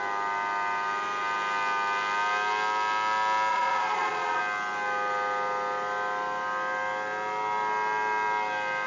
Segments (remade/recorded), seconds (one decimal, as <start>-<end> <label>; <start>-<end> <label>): 0.0-3.5 recorded; 3.5-4.4 remade; 4.4-8.9 recorded